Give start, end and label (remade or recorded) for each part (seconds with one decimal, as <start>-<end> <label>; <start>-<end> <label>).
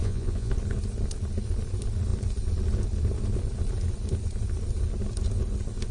0.0-0.5 remade; 0.5-5.9 recorded